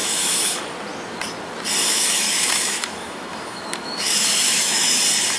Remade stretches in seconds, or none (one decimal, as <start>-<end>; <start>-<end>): 0.0-0.6; 1.8-5.0